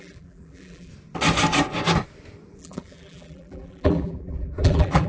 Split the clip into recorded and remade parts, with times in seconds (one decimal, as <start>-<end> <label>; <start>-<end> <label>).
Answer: 0.0-0.9 remade; 0.9-2.6 recorded; 2.6-5.1 remade